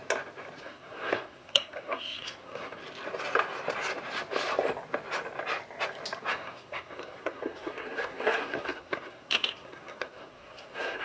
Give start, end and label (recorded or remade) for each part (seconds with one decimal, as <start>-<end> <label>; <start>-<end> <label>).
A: 0.0-0.6 recorded; 0.6-2.8 remade; 2.8-6.3 recorded; 6.3-11.0 remade